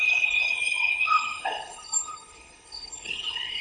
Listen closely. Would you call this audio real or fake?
fake